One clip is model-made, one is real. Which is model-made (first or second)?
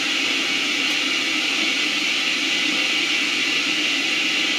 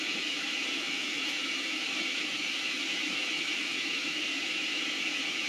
second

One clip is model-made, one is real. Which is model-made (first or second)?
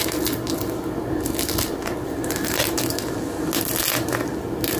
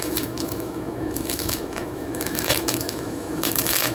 second